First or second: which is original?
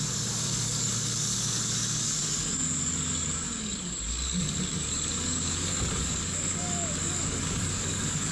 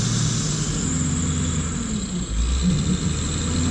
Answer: second